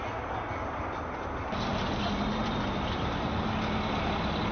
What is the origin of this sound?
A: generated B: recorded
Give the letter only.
B